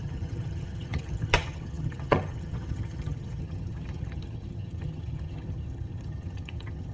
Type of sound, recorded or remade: remade